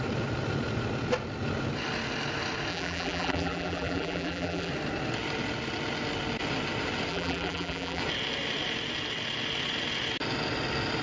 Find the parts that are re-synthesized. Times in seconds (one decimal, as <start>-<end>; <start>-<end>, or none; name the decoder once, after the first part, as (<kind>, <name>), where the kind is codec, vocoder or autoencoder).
2.7-4.7 (vocoder, BigVGAN v2); 7.1-8.0